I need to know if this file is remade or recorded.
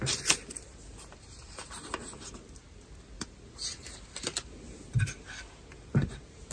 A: recorded